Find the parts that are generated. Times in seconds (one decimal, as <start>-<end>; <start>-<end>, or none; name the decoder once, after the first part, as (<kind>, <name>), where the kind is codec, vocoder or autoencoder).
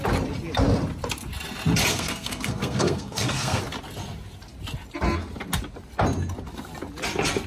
1.9-3.6 (codec, SNAC)